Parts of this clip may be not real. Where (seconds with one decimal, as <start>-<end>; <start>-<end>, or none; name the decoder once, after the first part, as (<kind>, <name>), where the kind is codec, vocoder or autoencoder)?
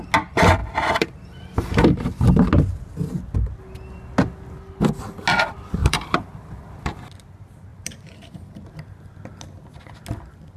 0.6-2.2 (vocoder, BigVGAN v2); 5.8-7.1; 7.7-8.7